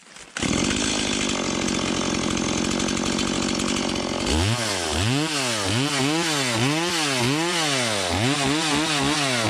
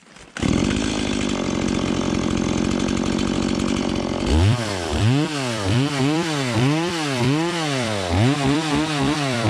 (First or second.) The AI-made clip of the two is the second